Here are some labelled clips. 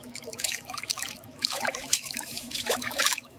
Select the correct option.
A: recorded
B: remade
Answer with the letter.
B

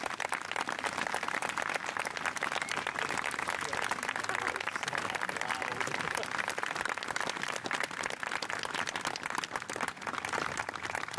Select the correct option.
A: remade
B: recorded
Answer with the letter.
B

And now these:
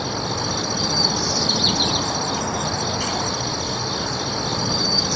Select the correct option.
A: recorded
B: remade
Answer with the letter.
A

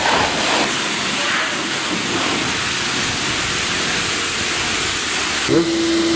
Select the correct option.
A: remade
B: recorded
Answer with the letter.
B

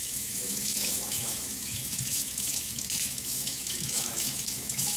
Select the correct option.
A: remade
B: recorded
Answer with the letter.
A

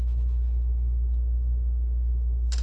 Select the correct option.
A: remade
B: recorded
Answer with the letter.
A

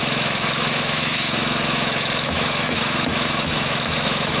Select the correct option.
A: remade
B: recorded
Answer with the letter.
A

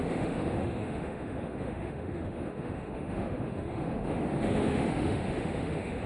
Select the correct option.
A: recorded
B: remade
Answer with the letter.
B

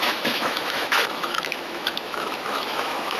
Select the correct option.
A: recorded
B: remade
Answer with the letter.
B